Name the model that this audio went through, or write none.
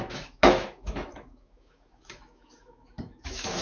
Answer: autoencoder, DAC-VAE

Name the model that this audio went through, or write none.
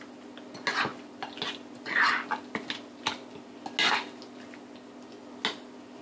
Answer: none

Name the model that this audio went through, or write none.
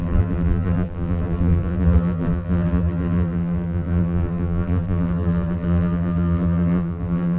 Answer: vocoder, BigVGAN v2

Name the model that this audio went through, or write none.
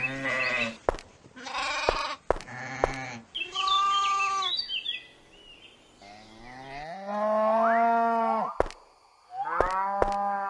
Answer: none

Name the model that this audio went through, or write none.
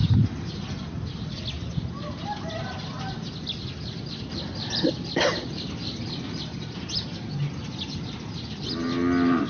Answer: none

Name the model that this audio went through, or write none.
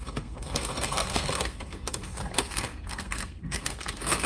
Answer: codec, SNAC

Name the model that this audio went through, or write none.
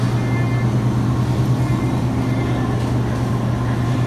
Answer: none